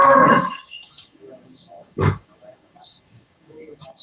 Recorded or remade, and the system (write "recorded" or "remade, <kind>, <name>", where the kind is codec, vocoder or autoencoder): remade, codec, DAC